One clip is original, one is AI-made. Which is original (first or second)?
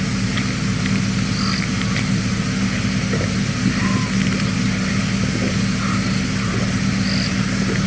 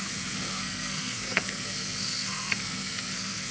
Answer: first